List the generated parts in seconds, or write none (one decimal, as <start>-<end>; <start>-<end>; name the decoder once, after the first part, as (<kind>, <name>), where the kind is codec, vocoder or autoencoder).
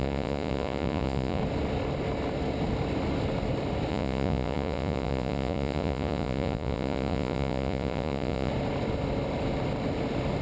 0.0-1.4 (vocoder, Vocos); 3.9-8.5